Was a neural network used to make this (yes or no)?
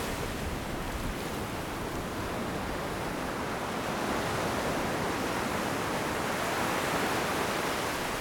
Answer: no